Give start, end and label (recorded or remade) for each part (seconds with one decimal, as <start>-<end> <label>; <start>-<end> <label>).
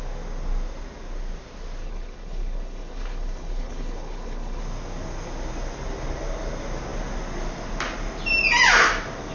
0.0-1.8 recorded; 1.8-4.6 remade; 4.6-9.3 recorded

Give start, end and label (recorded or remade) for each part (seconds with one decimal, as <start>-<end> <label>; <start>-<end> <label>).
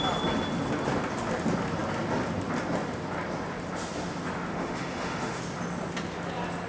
0.0-4.5 recorded; 4.5-5.4 remade; 5.4-6.7 recorded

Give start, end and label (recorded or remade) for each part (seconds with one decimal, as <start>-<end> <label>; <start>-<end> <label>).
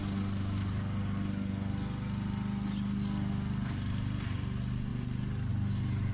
0.0-6.1 recorded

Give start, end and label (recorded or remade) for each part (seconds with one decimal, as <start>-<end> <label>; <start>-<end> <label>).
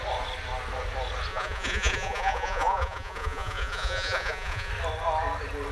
0.0-1.3 recorded; 1.3-4.7 remade; 4.7-5.7 recorded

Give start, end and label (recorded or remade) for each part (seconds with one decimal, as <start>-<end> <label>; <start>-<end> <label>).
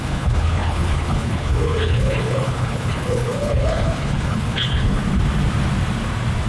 0.0-5.0 remade; 5.0-6.5 recorded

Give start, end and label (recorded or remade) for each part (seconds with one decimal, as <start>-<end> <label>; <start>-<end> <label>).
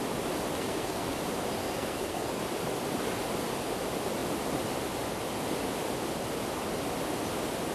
0.0-0.5 recorded; 0.5-1.2 remade; 1.2-1.6 recorded; 1.6-2.4 remade; 2.4-7.7 recorded